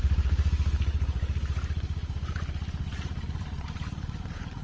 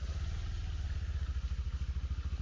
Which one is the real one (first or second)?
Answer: second